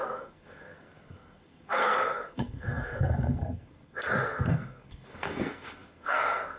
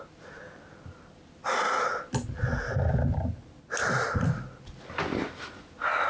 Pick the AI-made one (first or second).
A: first